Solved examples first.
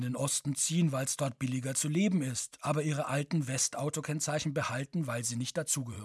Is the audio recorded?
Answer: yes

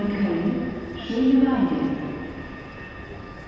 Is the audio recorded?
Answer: yes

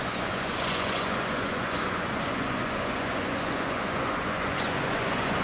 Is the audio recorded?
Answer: no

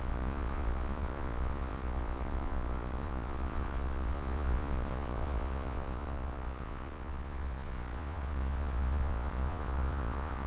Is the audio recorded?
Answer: no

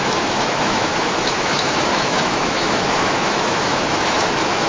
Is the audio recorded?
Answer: no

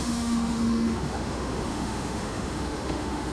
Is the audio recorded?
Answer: no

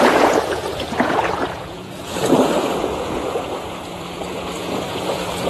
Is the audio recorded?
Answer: no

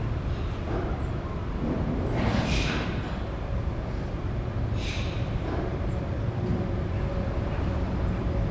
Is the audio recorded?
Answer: no